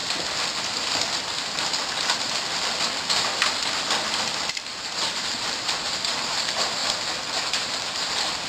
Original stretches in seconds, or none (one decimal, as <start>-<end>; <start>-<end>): 0.0-4.5; 6.8-7.5